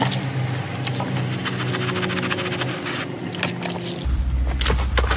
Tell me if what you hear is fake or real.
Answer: real